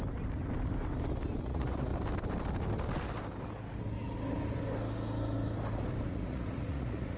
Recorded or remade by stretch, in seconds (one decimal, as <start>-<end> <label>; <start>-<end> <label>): 0.0-1.4 recorded; 1.4-1.9 remade; 1.9-6.1 recorded; 6.1-7.2 remade